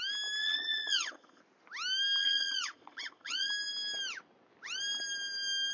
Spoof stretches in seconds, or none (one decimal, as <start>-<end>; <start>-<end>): 0.4-1.4; 2.2-3.5